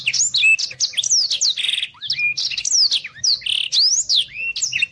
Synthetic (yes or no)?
no